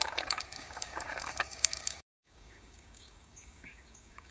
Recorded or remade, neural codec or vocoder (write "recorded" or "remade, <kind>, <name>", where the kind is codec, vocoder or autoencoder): remade, codec, DAC